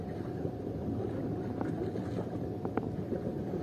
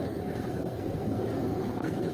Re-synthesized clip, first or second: second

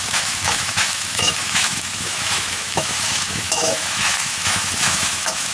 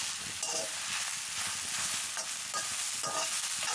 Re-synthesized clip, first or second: first